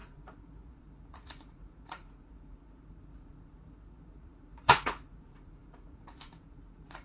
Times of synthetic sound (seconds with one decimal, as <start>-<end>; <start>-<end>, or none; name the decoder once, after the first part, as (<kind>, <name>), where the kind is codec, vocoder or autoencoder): 0.0-7.0 (vocoder, Vocos)